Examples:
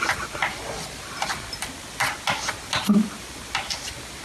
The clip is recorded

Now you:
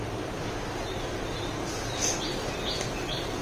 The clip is recorded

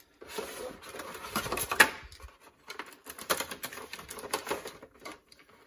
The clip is recorded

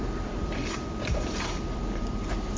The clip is remade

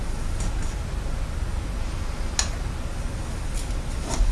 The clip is recorded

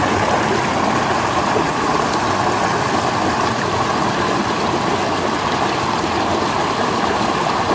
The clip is recorded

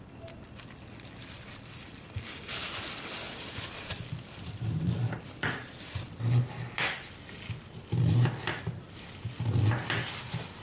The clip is remade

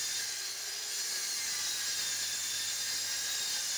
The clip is recorded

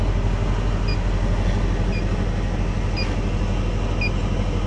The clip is recorded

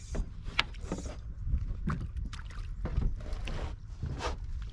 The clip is recorded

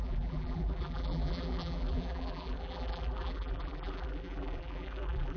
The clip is remade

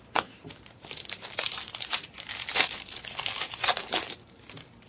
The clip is remade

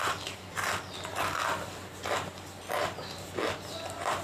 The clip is recorded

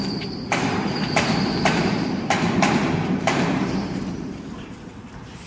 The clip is remade